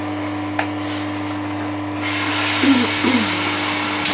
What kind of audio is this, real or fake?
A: real